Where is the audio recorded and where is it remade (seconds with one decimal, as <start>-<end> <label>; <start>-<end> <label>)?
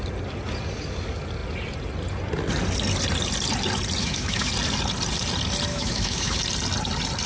0.0-4.0 recorded; 4.0-4.5 remade; 4.5-5.7 recorded; 5.7-6.4 remade; 6.4-7.3 recorded